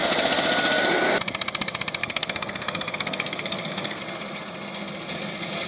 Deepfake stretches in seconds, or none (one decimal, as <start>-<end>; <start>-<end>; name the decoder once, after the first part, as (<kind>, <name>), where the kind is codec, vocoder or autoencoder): 2.0-4.0 (codec, SNAC)